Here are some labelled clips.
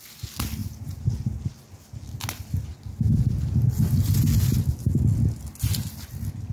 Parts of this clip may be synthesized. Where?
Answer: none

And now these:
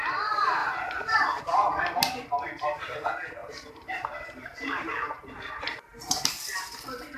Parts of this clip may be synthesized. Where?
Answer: 0.6-1.4 (vocoder, BigVGAN v2); 3.4-5.2

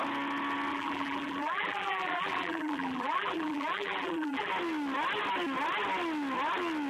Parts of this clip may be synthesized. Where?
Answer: 0.7-4.5 (vocoder, BigVGAN v2)

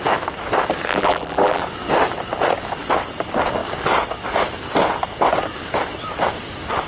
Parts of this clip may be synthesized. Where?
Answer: 0.9-1.6 (vocoder, BigVGAN v2)

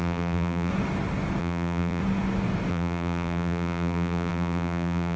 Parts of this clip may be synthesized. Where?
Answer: 0.0-0.7 (vocoder, BigVGAN v2); 1.4-2.0; 2.7-5.2